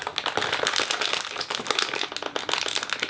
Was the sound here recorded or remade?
recorded